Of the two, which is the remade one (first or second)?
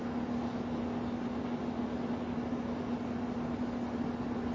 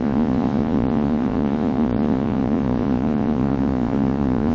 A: second